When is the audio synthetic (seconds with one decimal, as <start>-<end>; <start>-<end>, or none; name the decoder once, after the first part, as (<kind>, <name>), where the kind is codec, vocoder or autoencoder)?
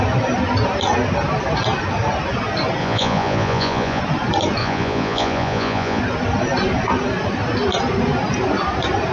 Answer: 2.8-4.0 (vocoder, Vocos); 4.6-6.0